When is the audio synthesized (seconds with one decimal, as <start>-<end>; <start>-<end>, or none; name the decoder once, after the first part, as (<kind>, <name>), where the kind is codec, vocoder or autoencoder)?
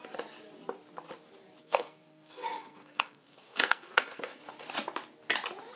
1.6-4.4 (codec, SNAC)